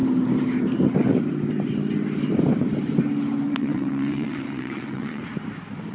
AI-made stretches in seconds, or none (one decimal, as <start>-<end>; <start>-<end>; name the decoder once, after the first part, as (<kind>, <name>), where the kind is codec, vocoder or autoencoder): 3.5-5.2 (vocoder, WaveNeXt)